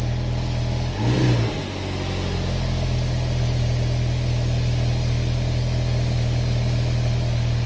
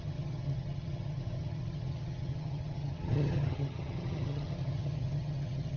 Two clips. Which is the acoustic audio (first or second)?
first